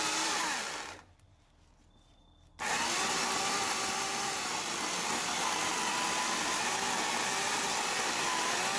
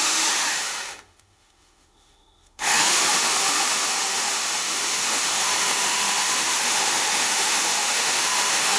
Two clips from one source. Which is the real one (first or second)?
first